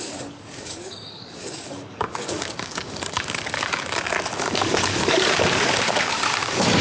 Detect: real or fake fake